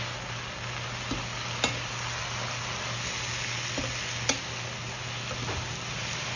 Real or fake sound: real